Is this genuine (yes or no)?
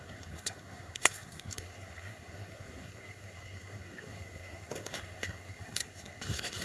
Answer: no